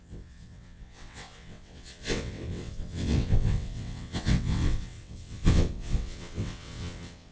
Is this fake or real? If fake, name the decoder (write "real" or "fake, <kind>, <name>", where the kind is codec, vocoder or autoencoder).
fake, vocoder, WaveNeXt